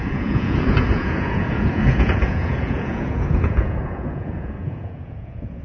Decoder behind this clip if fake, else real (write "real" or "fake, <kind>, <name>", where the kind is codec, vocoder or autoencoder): fake, vocoder, Vocos